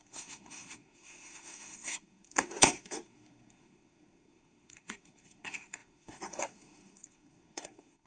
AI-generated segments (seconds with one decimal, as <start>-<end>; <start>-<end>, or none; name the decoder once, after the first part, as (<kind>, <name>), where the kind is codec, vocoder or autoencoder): 0.0-8.1 (codec, SNAC)